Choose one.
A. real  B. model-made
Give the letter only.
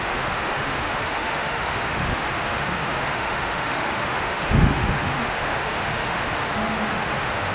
B